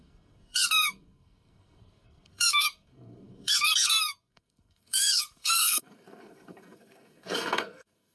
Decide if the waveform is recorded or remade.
remade